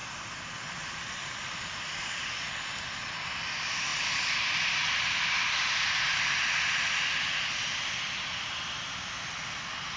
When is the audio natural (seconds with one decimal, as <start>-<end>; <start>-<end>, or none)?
2.4-3.9; 4.8-10.0